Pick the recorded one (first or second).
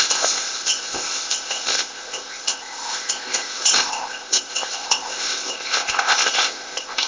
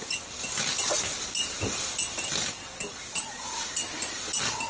second